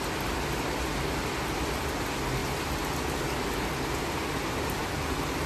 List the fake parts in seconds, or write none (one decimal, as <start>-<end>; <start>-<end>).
none